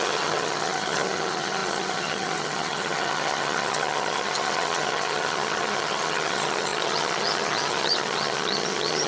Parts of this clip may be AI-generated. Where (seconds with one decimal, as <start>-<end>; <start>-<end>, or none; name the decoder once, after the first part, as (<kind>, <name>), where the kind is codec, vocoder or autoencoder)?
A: 0.0-9.1 (vocoder, HiFi-GAN)